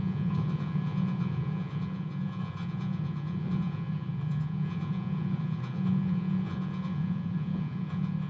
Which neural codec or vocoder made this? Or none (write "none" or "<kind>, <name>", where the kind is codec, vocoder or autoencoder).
vocoder, Vocos